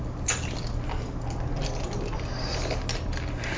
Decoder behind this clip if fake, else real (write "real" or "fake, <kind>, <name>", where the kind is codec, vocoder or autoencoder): real